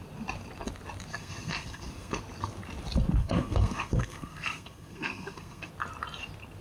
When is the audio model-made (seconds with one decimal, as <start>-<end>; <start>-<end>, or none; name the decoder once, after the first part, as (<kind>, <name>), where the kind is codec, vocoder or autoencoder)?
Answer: 1.1-2.2 (codec, SNAC); 3.2-5.7